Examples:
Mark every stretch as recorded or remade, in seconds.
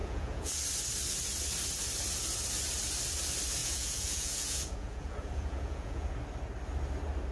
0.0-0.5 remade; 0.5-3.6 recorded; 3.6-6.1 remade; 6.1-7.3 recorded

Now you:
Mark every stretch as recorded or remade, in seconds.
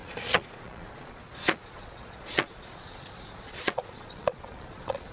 0.0-5.1 remade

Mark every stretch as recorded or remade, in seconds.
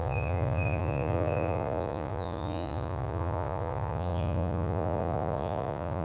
0.0-6.0 remade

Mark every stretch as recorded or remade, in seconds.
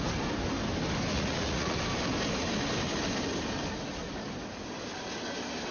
0.0-1.1 recorded; 1.1-1.8 remade; 1.8-5.7 recorded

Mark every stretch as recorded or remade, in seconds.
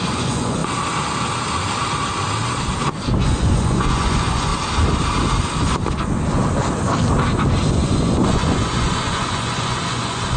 0.0-0.6 remade; 0.6-3.2 recorded; 3.2-4.5 remade; 4.5-7.7 recorded; 7.7-10.4 remade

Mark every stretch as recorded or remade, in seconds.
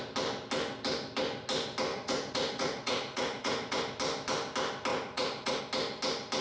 0.0-1.9 recorded; 1.9-3.8 remade; 3.8-4.9 recorded; 4.9-5.6 remade; 5.6-6.4 recorded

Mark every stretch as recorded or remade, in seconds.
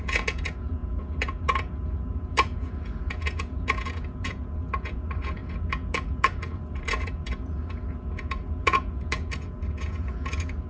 0.0-10.7 remade